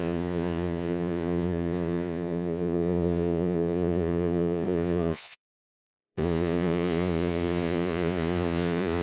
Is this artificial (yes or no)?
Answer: yes